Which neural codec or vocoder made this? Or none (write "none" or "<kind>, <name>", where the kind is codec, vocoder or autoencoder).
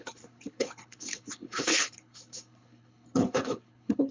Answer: codec, HILCodec